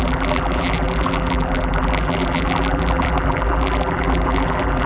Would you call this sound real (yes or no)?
no